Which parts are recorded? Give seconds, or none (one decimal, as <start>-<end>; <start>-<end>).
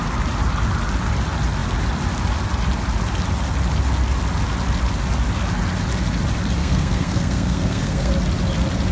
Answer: 0.0-6.6; 8.1-8.9